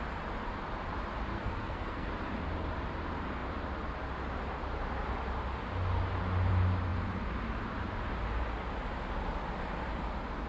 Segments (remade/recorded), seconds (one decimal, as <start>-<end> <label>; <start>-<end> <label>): 0.0-1.3 recorded; 1.3-2.1 remade; 2.1-10.5 recorded